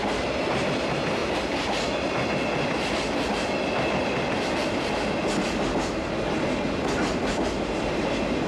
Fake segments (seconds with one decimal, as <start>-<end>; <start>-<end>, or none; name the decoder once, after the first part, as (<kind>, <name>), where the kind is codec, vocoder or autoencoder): none